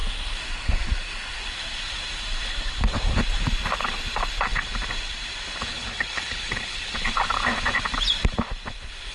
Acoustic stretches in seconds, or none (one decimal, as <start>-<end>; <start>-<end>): 0.0-5.7; 7.1-9.1